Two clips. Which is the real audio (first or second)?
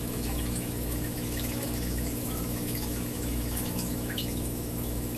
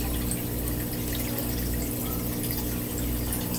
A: second